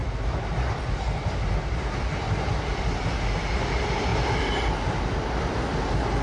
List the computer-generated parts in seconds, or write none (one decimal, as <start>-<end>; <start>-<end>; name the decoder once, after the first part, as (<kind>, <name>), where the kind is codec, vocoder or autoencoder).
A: none